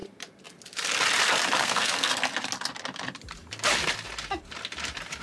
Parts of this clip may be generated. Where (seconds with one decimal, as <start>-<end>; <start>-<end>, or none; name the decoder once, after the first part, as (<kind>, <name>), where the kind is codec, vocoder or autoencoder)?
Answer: 1.6-2.1 (codec, SNAC)

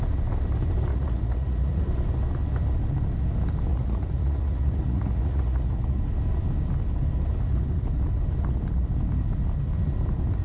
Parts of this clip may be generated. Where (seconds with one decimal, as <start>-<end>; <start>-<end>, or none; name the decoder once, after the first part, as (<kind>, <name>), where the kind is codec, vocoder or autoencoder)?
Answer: 0.9-1.8 (vocoder, Vocos); 3.7-6.0

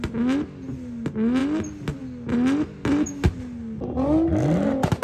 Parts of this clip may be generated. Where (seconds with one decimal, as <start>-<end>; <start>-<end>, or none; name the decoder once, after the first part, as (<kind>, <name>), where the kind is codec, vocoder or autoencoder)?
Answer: none